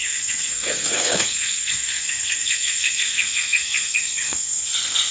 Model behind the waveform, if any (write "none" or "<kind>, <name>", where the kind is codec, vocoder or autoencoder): codec, SNAC